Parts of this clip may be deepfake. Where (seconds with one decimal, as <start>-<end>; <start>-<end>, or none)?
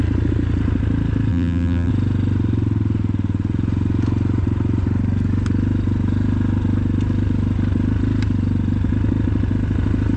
1.3-1.9